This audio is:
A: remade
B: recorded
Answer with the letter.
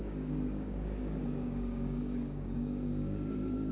A